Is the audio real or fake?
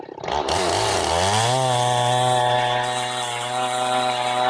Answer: real